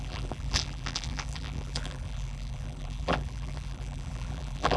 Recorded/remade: remade